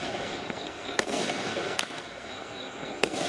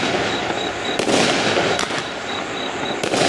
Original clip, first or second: second